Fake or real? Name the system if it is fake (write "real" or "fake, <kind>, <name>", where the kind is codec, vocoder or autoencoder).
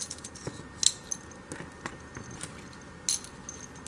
real